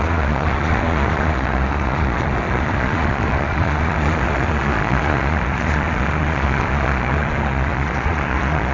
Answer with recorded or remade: remade